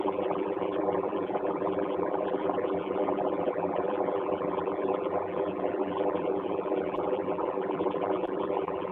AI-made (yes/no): yes